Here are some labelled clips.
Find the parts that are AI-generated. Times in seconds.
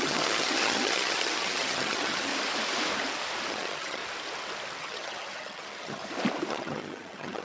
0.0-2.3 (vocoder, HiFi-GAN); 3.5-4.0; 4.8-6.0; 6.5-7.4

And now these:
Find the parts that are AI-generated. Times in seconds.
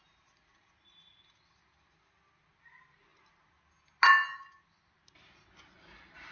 none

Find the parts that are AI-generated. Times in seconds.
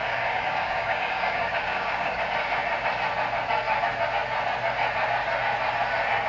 0.0-2.2 (codec, DAC)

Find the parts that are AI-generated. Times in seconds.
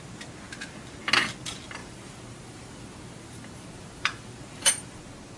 1.8-5.0 (vocoder, BigVGAN v2)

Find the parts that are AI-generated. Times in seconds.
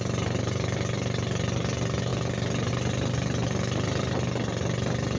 none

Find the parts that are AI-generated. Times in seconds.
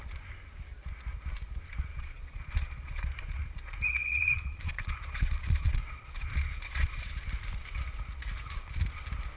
1.9-7.0 (vocoder, Vocos)